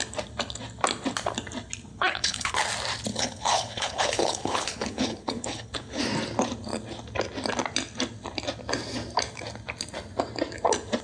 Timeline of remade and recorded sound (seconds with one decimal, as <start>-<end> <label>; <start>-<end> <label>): 0.0-1.9 recorded; 1.9-2.5 remade; 2.5-3.1 recorded; 3.1-6.0 remade; 6.0-11.0 recorded